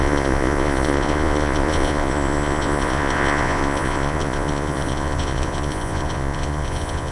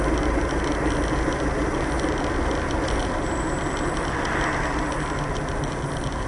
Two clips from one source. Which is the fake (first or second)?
first